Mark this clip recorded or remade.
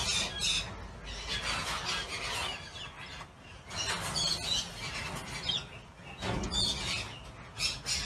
recorded